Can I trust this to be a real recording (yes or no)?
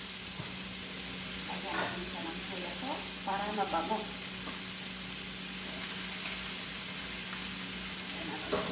yes